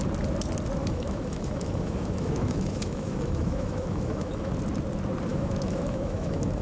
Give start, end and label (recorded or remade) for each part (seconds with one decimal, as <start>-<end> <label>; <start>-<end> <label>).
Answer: 0.0-0.8 recorded; 0.8-4.5 remade; 4.5-5.3 recorded; 5.3-6.6 remade